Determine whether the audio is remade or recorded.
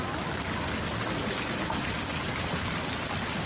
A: recorded